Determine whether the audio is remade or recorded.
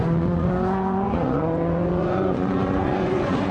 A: remade